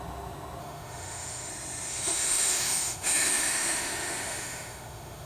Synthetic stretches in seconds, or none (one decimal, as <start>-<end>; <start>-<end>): 0.6-1.5; 1.9-5.3